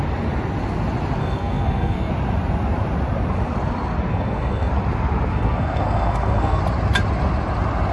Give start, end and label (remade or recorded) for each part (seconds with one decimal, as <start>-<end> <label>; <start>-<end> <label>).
0.0-1.2 recorded; 1.2-2.1 remade; 2.1-4.1 recorded; 4.1-4.7 remade; 4.7-5.3 recorded; 5.3-6.6 remade; 6.6-7.9 recorded